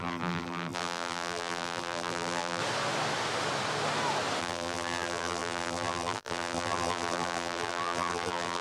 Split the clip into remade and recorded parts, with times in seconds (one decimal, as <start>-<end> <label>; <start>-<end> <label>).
0.0-2.6 remade; 2.6-4.4 recorded; 4.4-8.6 remade